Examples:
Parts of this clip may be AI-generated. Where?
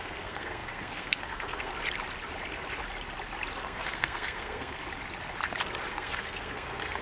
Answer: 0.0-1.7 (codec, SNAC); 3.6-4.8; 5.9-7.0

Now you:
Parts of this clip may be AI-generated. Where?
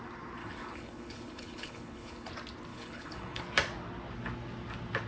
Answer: 0.4-2.3 (codec, HILCodec); 2.7-3.4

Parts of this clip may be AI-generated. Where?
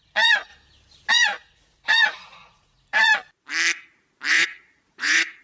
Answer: 0.0-0.5 (vocoder, Vocos); 1.1-3.1; 4.3-5.4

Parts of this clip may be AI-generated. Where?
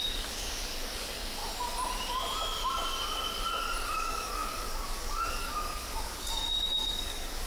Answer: 0.0-1.4 (codec, DAC); 4.0-7.5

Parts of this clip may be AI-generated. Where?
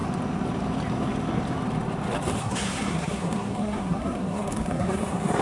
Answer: 2.4-5.4 (codec, SNAC)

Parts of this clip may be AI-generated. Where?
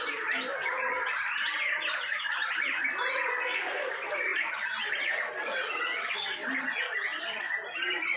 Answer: 3.3-3.9 (codec, SNAC)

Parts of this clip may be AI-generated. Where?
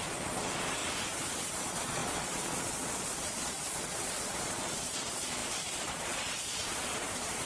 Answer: 0.0-0.8 (vocoder, Vocos); 1.6-7.5